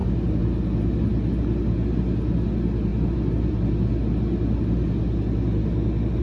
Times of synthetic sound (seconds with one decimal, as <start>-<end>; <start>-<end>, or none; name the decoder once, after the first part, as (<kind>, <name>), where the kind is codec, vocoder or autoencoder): none